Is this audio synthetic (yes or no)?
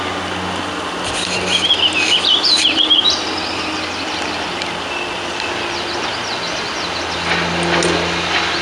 no